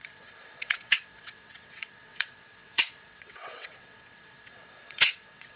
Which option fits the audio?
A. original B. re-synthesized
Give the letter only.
B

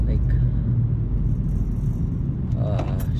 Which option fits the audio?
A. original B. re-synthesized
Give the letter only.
A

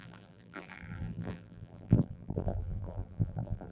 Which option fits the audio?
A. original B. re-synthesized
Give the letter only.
B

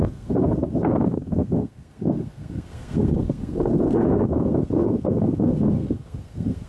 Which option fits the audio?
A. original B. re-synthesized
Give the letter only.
B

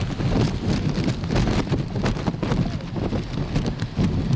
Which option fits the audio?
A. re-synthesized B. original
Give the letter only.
B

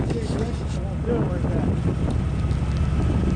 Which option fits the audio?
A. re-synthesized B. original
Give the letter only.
B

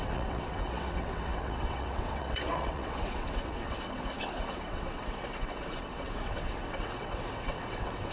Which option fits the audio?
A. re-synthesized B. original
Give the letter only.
A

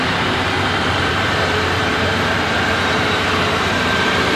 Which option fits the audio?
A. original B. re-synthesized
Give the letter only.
B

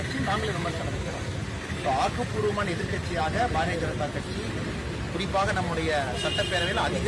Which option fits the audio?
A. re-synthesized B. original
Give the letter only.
B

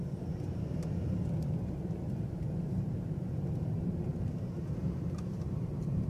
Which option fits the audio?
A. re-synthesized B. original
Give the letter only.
A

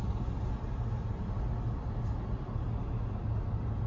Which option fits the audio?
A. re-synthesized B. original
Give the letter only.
B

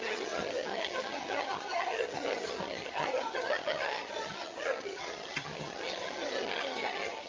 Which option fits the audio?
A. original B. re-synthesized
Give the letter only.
B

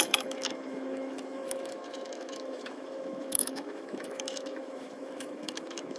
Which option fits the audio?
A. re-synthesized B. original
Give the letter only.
A